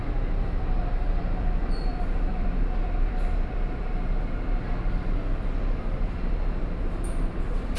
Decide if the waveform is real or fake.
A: fake